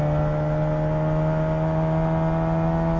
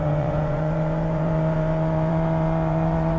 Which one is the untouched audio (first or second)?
first